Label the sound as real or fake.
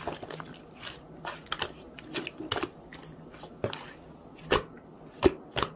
real